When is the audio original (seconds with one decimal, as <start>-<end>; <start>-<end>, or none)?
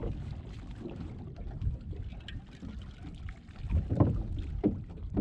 0.0-5.2